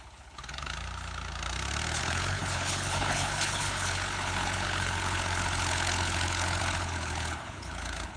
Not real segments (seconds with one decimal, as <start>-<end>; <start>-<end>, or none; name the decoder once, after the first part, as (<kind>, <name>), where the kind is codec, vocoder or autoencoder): 0.0-0.7 (codec, HILCodec); 2.0-8.2